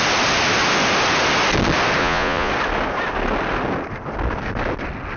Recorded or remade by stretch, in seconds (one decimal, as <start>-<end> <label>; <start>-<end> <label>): 0.0-2.0 recorded; 2.0-2.5 remade; 2.5-5.2 recorded